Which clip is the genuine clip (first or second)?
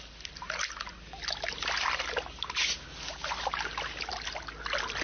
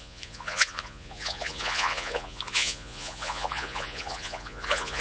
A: first